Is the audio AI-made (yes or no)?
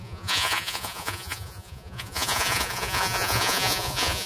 yes